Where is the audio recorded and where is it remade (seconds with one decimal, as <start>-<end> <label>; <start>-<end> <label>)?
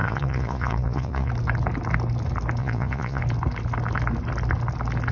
0.0-1.3 remade; 1.3-2.6 recorded; 2.6-3.2 remade; 3.2-5.1 recorded